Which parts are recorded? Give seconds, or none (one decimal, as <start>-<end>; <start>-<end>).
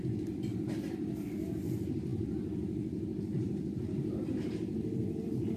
none